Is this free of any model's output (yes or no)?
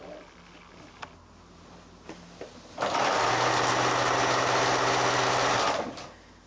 yes